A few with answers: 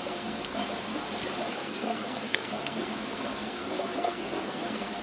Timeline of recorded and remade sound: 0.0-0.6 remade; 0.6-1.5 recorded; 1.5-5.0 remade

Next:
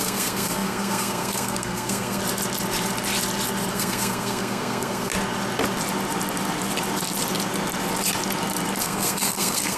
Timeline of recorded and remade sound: 0.0-2.2 remade; 2.2-3.7 recorded; 3.7-5.1 remade; 5.1-8.8 recorded; 8.8-9.8 remade